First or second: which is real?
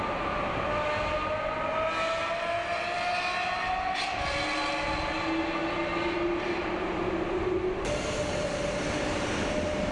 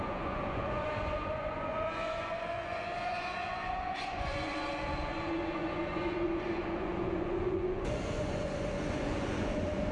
first